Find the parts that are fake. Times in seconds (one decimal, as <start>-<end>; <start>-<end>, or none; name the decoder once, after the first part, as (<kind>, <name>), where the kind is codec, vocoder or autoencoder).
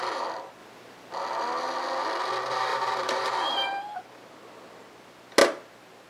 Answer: 2.7-4.0 (vocoder, BigVGAN v2); 5.4-6.1